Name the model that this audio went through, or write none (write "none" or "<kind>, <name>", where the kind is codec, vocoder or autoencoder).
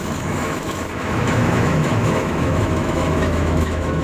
autoencoder, DAC-VAE